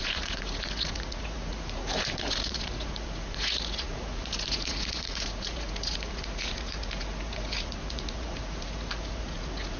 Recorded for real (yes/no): no